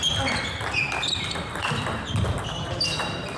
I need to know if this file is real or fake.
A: real